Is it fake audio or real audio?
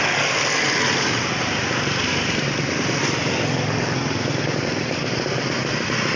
real